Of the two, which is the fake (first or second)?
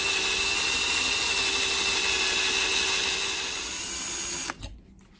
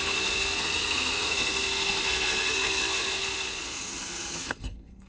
second